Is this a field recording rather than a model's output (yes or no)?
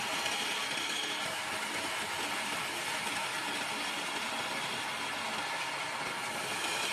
yes